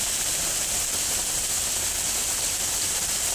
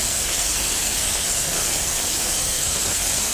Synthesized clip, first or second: second